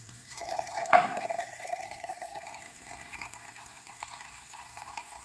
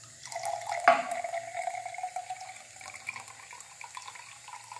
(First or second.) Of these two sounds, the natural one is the second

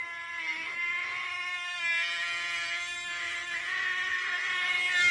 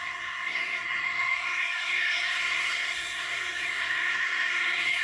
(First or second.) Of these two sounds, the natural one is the first